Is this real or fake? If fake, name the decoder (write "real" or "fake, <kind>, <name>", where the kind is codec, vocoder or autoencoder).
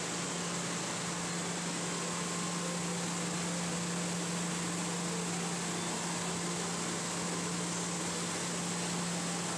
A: real